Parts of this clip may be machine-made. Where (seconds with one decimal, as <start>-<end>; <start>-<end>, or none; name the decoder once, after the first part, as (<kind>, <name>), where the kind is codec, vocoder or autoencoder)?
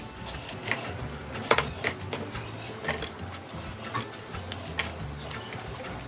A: none